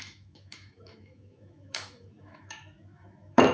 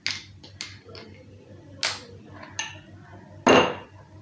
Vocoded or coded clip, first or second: first